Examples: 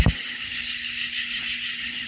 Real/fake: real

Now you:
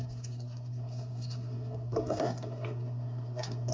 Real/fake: fake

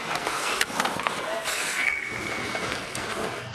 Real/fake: fake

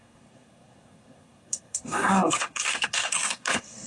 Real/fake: fake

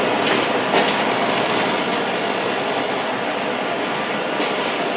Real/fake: real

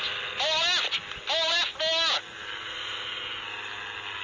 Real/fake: real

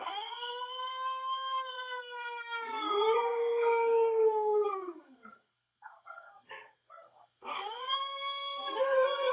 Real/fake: fake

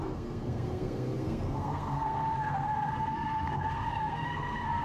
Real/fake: fake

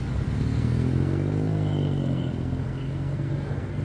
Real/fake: fake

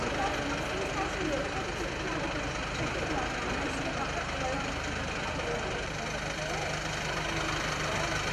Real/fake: real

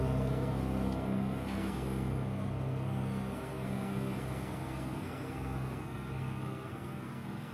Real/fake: fake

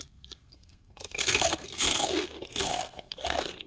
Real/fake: fake